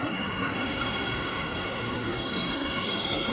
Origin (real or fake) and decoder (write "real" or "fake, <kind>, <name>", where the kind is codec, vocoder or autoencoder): fake, codec, SNAC